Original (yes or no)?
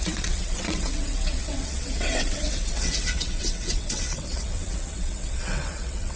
no